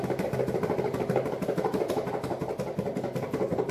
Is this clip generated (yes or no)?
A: no